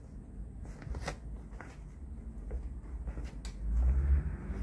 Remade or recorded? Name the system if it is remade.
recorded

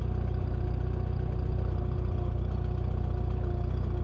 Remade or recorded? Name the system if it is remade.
recorded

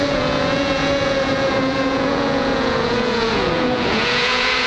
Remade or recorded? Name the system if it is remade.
remade, vocoder, Vocos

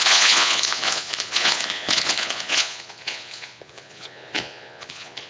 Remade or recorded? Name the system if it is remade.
remade, vocoder, Vocos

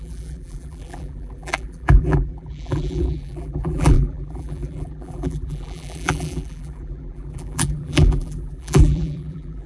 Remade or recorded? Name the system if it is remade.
remade, vocoder, BigVGAN v2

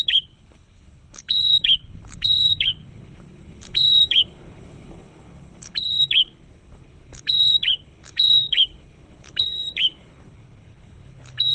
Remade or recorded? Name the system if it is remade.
remade, codec, HILCodec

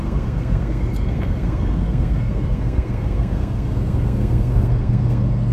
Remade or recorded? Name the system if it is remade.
remade, codec, SNAC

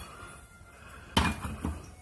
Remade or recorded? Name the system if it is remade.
recorded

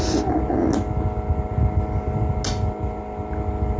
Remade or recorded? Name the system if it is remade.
recorded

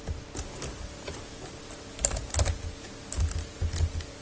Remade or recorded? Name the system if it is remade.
recorded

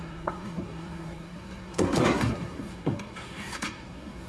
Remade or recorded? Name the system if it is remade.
remade, codec, SNAC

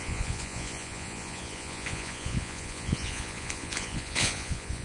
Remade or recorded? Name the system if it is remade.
remade, vocoder, Vocos